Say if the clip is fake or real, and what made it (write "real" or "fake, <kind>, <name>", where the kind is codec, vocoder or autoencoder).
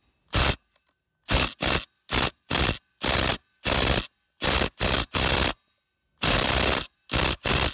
real